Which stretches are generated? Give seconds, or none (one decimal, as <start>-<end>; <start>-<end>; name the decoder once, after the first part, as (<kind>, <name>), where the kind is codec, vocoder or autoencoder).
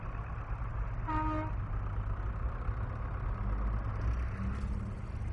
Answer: none